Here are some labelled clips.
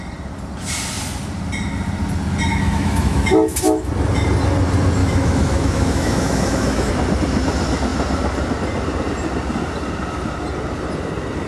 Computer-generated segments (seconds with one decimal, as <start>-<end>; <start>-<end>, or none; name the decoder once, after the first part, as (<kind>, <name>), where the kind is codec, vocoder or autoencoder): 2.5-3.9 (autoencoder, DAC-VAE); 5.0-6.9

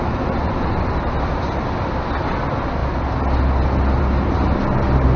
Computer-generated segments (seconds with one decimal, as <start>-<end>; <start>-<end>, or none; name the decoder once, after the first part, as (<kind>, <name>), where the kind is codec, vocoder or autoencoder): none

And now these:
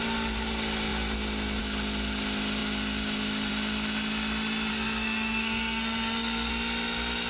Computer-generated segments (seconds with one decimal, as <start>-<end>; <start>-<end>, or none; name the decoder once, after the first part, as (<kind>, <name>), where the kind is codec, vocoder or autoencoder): 4.7-6.5 (codec, SNAC)

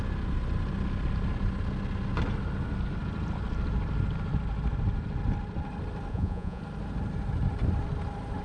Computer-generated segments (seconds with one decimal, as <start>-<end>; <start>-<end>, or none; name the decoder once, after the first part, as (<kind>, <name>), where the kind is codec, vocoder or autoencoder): 6.1-6.6 (vocoder, Vocos)